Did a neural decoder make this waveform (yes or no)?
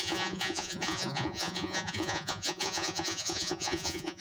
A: yes